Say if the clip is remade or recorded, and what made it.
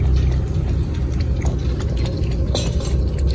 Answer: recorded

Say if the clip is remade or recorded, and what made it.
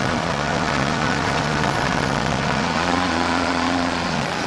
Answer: remade, vocoder, Vocos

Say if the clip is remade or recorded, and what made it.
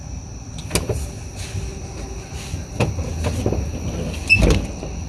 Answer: recorded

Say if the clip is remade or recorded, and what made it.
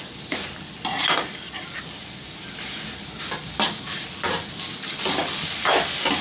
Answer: recorded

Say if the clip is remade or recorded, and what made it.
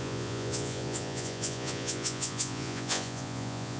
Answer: remade, vocoder, Vocos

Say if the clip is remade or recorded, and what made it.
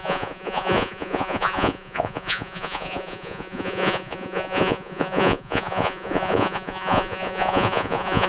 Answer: remade, vocoder, Vocos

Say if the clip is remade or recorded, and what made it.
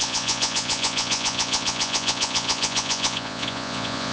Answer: remade, vocoder, Vocos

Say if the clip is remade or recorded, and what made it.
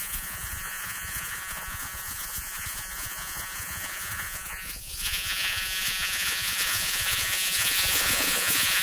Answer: remade, vocoder, Vocos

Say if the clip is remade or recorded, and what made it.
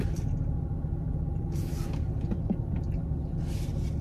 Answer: recorded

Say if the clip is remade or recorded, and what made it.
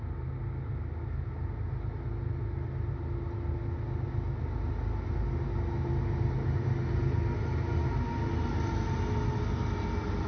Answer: recorded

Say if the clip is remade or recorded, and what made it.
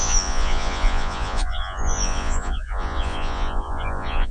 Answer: remade, vocoder, Vocos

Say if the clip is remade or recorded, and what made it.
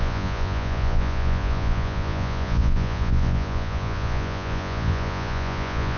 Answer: remade, vocoder, Vocos